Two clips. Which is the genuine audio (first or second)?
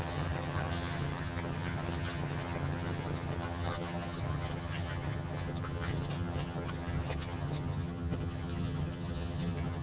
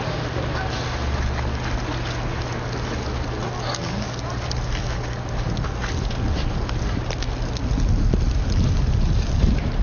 second